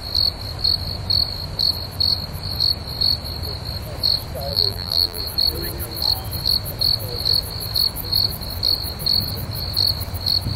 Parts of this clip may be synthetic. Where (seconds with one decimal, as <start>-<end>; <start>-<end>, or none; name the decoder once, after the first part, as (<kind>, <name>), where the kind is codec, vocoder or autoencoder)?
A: 4.5-5.2 (vocoder, BigVGAN v2)